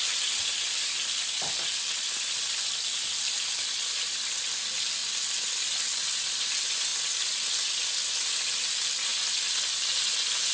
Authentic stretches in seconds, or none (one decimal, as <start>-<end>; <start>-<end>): 0.0-10.5

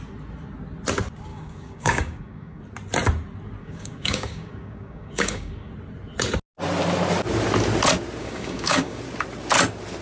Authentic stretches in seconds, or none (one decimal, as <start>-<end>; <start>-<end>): 0.0-1.3; 2.6-3.6; 5.7-8.2; 9.0-10.0

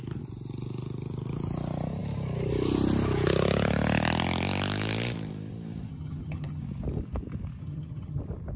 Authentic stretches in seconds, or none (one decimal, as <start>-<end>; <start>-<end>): 0.0-5.9; 6.6-7.6; 8.2-8.6

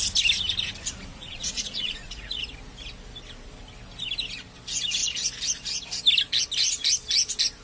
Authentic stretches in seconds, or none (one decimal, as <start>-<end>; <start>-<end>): 0.0-1.1; 2.4-7.6

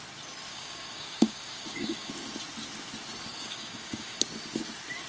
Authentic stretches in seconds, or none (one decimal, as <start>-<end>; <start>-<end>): 0.0-0.5; 2.1-3.3; 4.2-5.1

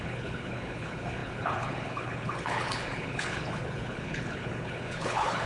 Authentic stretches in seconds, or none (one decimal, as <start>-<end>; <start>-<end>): none

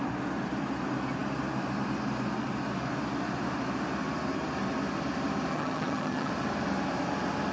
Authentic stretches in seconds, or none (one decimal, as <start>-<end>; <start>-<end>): 0.0-5.5; 6.3-7.5

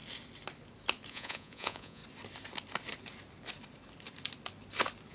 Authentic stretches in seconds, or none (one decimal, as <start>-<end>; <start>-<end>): 0.0-1.1; 2.0-5.1